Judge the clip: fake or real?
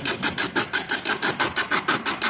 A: real